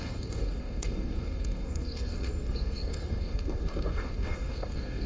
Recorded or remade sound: remade